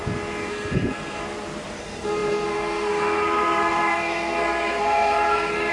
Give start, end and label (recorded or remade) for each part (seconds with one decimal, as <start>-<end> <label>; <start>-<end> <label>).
0.0-0.5 recorded; 0.5-1.2 remade; 1.2-1.8 recorded; 1.8-5.7 remade